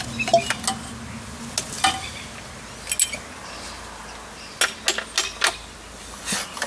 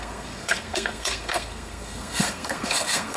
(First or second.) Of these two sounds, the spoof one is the second